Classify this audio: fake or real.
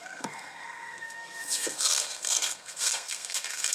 fake